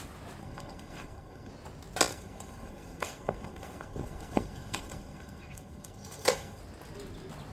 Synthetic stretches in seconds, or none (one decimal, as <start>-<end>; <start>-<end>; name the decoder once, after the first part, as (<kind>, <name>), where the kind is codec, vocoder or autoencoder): 0.4-1.5 (codec, SNAC); 2.1-6.6